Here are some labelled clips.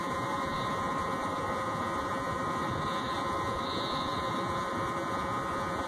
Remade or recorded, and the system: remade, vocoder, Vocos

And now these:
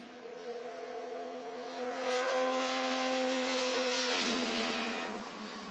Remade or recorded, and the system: remade, vocoder, Vocos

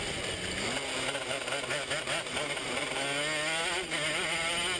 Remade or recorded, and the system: recorded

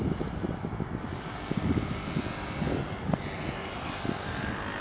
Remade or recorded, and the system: recorded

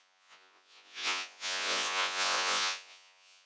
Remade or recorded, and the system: remade, vocoder, Vocos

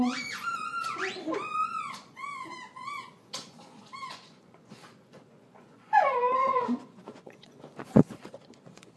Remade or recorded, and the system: remade, vocoder, Vocos